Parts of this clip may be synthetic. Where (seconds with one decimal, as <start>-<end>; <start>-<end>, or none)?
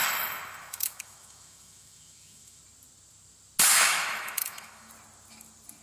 0.0-2.6; 3.7-4.9